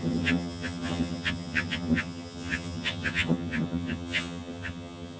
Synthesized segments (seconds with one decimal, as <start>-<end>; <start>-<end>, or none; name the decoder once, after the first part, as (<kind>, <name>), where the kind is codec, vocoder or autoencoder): 0.0-5.2 (vocoder, HiFi-GAN)